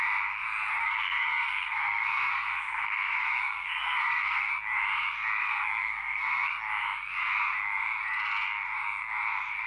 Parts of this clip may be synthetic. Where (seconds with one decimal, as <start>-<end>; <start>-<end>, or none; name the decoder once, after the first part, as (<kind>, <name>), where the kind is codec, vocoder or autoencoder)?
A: 0.8-4.5 (codec, SNAC); 5.4-6.5